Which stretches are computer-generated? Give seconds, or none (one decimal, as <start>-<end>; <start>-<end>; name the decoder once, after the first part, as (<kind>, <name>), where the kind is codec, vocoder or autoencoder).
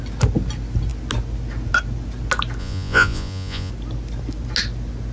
2.6-3.7 (vocoder, Vocos)